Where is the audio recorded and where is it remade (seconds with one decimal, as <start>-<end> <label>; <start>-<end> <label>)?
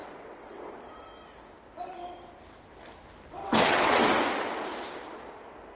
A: 0.0-0.7 remade; 0.7-3.4 recorded; 3.4-4.2 remade; 4.2-5.8 recorded